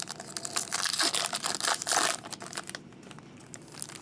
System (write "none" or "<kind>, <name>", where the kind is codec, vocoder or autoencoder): none